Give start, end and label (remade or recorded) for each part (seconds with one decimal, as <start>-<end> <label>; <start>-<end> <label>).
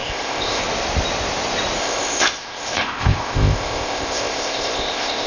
0.0-0.6 remade; 0.6-1.8 recorded; 1.8-5.3 remade